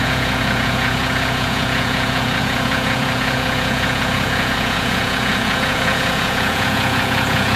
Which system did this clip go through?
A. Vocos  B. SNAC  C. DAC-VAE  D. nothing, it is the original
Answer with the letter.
A